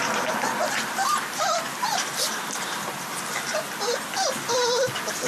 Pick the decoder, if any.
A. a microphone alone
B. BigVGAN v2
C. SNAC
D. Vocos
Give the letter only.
A